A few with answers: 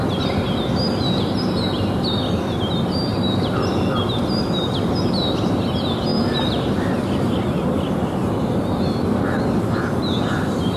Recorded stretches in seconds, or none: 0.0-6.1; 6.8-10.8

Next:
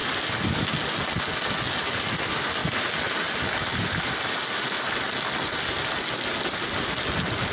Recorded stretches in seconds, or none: 0.0-7.5